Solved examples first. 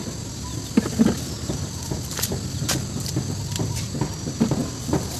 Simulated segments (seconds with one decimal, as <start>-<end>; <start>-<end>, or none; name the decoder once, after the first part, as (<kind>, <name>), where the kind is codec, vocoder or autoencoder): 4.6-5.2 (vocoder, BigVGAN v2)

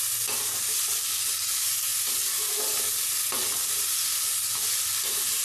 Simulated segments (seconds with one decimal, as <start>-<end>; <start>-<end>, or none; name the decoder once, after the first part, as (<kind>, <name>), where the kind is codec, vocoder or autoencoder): 1.9-2.9 (vocoder, BigVGAN v2)

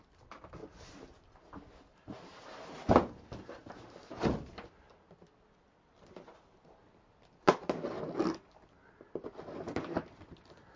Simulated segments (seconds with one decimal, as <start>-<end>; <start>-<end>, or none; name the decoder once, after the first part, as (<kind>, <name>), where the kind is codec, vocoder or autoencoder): none